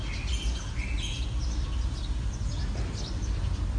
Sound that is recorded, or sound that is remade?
recorded